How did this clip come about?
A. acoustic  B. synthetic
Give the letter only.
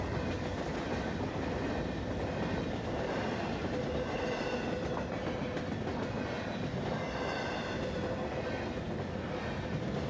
A